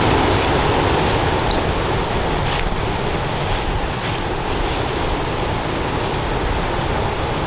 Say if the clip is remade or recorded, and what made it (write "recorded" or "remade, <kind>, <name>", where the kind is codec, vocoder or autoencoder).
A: recorded